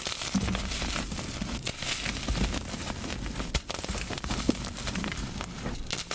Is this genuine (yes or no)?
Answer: yes